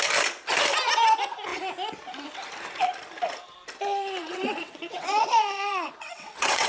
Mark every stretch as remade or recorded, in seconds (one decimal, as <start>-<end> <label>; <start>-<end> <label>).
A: 0.0-4.2 recorded; 4.2-6.7 remade